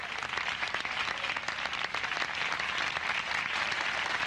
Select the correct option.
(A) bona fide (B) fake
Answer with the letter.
A